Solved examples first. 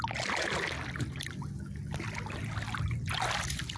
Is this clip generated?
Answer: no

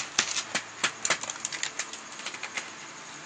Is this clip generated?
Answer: no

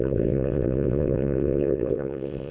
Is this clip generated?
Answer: yes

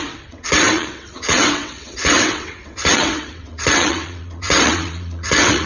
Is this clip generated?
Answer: yes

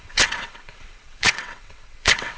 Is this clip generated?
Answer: yes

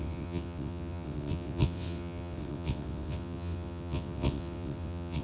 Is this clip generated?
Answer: yes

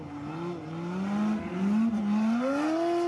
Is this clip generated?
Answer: no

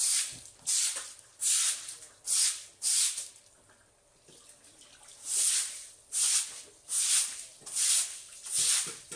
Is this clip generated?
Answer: no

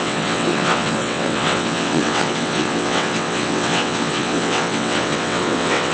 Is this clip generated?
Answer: yes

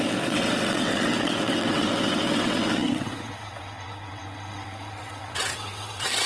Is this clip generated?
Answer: yes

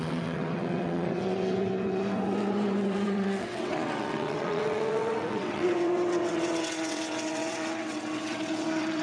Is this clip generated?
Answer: yes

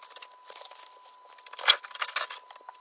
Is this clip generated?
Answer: no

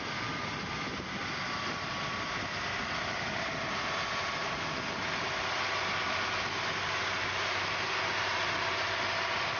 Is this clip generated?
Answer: no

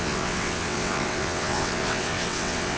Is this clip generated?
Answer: yes